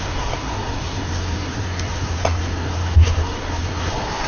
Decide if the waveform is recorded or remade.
remade